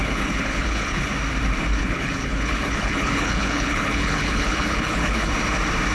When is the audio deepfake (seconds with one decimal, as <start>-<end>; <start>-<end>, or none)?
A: 0.0-1.1; 1.8-5.3